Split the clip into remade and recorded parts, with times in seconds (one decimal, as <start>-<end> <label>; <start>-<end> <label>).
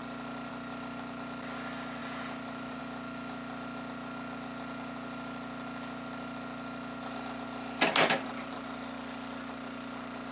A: 0.0-2.0 recorded; 2.0-2.8 remade; 2.8-10.3 recorded